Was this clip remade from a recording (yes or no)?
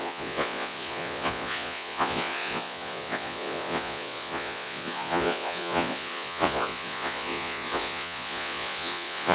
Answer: yes